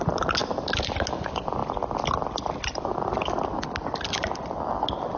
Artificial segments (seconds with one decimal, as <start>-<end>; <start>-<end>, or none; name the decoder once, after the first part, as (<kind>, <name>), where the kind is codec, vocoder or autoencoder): none